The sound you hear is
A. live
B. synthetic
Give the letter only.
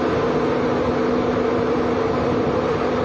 A